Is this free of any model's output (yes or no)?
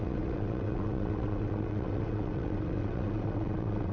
no